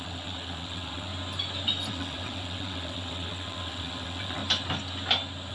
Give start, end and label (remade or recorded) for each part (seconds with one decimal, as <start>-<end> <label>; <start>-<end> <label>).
0.0-1.1 remade; 1.1-1.9 recorded; 1.9-4.4 remade; 4.4-5.5 recorded